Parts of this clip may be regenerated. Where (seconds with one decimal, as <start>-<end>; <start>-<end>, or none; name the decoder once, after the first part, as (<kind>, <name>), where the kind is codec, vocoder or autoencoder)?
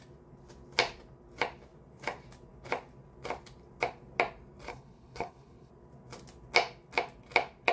4.7-5.7 (codec, HILCodec)